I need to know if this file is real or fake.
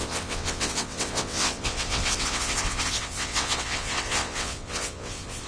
fake